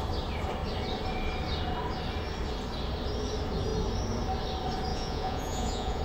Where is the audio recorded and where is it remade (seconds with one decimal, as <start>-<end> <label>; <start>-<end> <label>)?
0.0-4.9 recorded; 4.9-6.0 remade